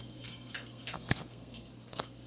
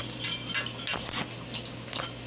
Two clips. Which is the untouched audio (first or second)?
second